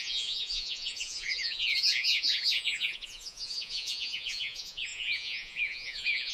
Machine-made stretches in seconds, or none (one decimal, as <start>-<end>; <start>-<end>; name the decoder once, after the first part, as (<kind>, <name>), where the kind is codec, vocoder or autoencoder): 0.0-6.3 (vocoder, Vocos)